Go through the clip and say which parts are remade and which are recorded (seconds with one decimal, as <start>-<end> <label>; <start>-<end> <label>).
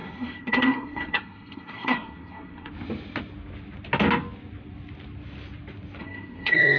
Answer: 0.0-2.7 remade; 2.7-6.0 recorded; 6.0-6.8 remade